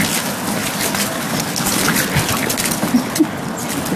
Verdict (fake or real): real